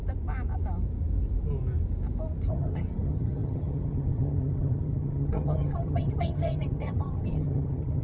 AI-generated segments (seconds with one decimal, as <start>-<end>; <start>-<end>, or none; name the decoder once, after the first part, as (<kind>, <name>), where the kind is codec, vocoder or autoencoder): 2.5-8.0 (vocoder, HiFi-GAN)